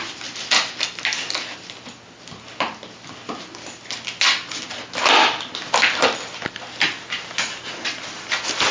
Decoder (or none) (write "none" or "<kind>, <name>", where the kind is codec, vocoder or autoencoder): none